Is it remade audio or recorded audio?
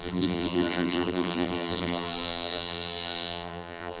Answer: remade